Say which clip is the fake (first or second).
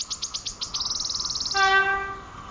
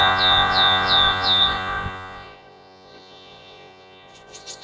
second